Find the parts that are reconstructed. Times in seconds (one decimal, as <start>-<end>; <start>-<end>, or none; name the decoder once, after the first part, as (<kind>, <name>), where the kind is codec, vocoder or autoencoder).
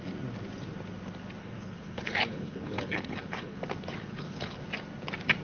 1.4-3.6 (codec, HILCodec); 4.0-4.6